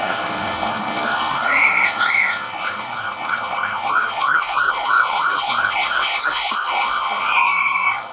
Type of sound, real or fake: fake